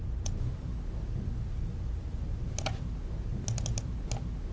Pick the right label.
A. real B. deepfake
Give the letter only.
A